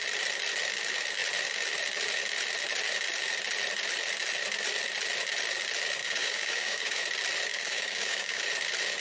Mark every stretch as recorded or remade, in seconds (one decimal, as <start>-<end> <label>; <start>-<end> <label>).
0.0-6.0 recorded; 6.0-7.0 remade; 7.0-7.5 recorded; 7.5-8.4 remade; 8.4-9.0 recorded